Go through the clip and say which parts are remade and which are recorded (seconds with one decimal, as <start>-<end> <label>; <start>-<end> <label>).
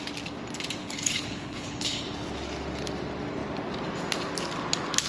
0.0-0.8 recorded; 0.8-2.0 remade; 2.0-5.1 recorded